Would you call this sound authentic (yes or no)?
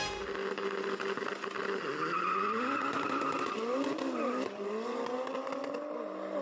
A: yes